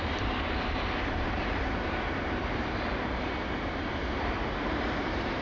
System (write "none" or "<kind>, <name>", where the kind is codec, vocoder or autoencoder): vocoder, BigVGAN v2